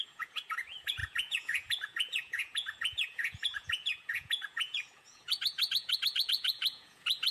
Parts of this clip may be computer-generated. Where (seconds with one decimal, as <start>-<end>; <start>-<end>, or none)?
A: 0.0-7.3